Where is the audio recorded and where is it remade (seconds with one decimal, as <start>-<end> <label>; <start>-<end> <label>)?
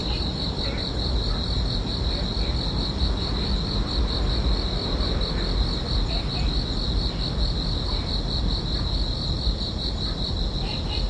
0.0-11.1 recorded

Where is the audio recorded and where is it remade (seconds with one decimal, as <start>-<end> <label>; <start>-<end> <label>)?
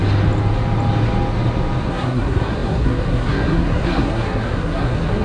0.0-1.9 recorded; 1.9-5.2 remade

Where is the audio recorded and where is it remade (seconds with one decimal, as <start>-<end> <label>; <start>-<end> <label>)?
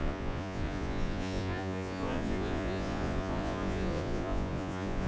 0.0-5.1 remade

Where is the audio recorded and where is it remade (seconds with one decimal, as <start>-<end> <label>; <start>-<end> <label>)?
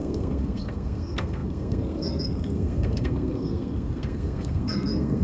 0.0-5.2 remade